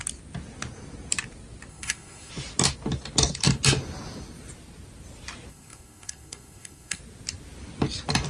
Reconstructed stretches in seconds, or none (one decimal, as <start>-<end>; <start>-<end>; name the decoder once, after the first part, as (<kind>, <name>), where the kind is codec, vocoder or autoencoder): 1.7-2.3 (codec, SNAC); 5.5-7.0